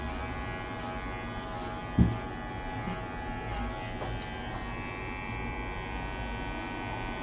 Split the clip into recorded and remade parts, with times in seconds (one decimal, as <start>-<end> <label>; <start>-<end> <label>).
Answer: 0.0-7.2 recorded